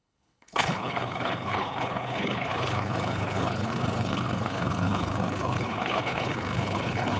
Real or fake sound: fake